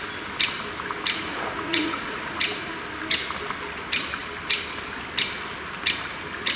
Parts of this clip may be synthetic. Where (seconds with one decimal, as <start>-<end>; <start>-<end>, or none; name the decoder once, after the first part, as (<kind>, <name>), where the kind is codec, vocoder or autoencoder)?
1.3-2.4 (vocoder, Vocos)